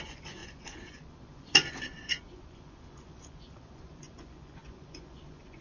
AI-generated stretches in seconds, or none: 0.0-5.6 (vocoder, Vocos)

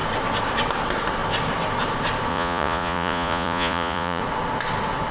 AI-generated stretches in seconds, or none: 2.3-4.2 (vocoder, Vocos)

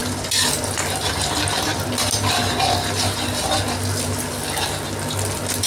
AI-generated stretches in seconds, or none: none